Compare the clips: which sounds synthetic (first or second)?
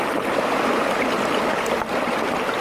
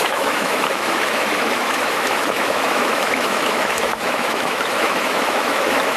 second